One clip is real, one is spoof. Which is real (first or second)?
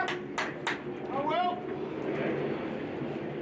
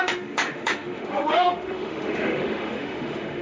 first